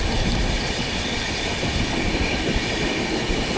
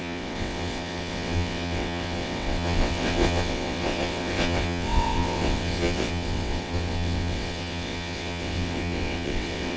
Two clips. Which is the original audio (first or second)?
first